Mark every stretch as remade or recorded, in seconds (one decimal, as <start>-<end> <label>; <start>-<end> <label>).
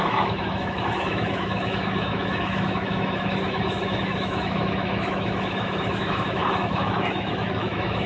0.0-8.1 remade